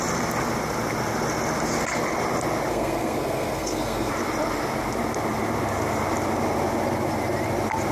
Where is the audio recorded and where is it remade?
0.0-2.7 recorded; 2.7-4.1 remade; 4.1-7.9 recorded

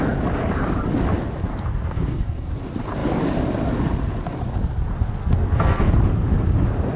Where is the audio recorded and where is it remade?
0.0-1.5 recorded; 1.5-2.5 remade; 2.5-5.2 recorded; 5.2-5.9 remade; 5.9-7.0 recorded

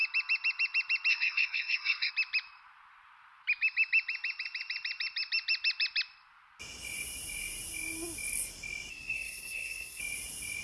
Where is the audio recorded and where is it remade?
0.0-1.1 recorded; 1.1-2.1 remade; 2.1-8.9 recorded; 8.9-10.0 remade; 10.0-10.6 recorded

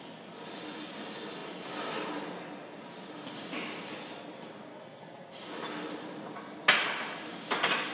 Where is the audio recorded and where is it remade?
0.0-4.7 recorded; 4.7-5.3 remade; 5.3-7.9 recorded